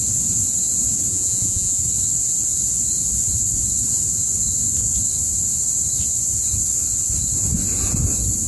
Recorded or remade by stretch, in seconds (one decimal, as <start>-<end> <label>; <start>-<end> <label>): 0.0-1.1 recorded; 1.1-1.8 remade; 1.8-8.5 recorded